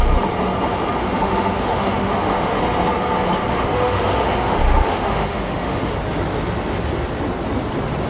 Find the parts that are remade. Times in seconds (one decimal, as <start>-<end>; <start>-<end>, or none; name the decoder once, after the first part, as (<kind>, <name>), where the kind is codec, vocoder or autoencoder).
1.0-2.6 (autoencoder, DAC-VAE); 3.5-5.9